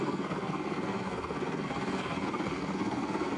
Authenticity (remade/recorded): remade